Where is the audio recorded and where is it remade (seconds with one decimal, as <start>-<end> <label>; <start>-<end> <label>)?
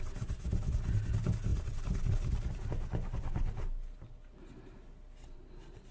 0.0-1.5 recorded; 1.5-2.1 remade; 2.1-5.9 recorded